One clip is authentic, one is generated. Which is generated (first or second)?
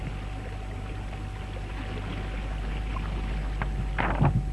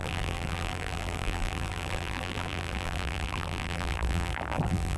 second